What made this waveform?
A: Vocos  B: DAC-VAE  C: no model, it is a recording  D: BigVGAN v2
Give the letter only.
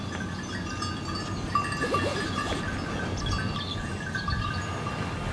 C